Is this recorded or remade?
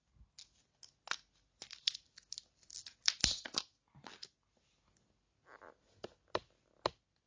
recorded